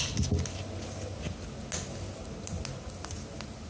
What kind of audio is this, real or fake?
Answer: real